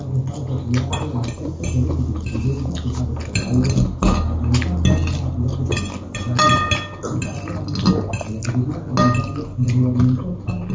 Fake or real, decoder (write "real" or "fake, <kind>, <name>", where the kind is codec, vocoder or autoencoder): real